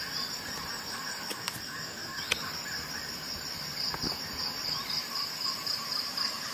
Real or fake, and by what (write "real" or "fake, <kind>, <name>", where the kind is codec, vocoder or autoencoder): real